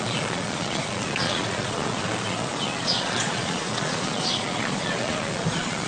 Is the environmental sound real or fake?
fake